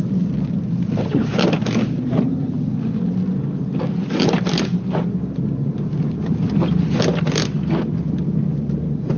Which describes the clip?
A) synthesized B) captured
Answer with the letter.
B